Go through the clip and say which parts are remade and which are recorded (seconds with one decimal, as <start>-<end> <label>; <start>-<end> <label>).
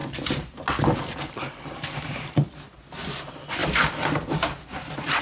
0.0-1.3 recorded; 1.3-3.6 remade; 3.6-4.6 recorded; 4.6-5.2 remade